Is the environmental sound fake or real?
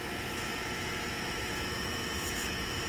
fake